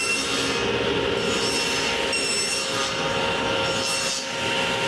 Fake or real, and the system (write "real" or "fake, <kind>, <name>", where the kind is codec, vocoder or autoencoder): real